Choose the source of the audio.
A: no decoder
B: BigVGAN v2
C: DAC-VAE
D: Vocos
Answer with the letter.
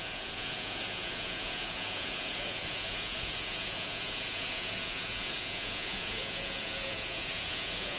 D